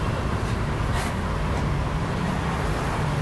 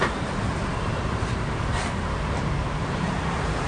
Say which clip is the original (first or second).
first